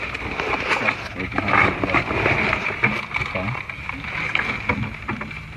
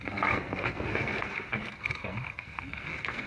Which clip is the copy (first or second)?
second